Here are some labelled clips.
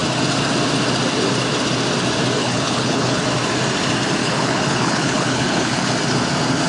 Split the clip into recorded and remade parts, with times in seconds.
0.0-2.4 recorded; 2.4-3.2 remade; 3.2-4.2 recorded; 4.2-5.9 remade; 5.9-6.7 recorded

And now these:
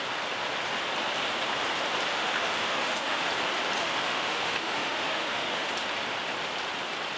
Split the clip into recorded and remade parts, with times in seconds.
0.0-2.1 recorded; 2.1-3.3 remade; 3.3-3.8 recorded; 3.8-5.7 remade; 5.7-7.2 recorded

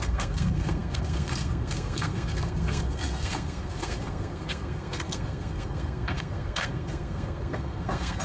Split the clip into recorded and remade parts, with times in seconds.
0.0-8.2 remade

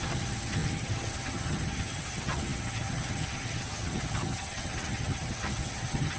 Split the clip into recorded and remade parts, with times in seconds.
0.0-6.2 remade